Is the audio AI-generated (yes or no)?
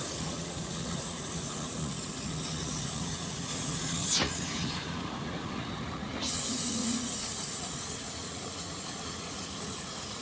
yes